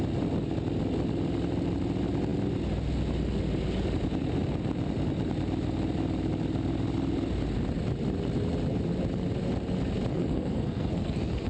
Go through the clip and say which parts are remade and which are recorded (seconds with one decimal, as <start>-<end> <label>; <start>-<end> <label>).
0.0-10.1 recorded; 10.1-11.5 remade